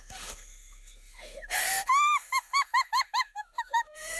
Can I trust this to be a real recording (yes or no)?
no